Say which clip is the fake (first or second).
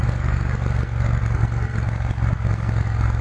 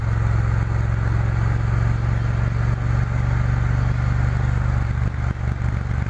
first